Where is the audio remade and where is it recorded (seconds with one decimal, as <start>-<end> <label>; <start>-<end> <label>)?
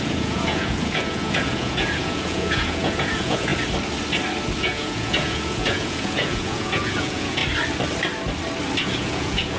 0.0-3.5 remade; 3.5-4.6 recorded; 4.6-7.4 remade; 7.4-8.8 recorded; 8.8-9.6 remade